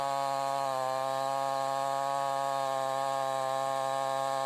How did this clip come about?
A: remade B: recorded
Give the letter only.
B